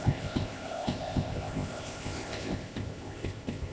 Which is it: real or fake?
fake